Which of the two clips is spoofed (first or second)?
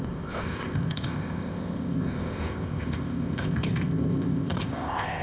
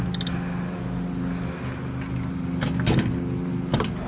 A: first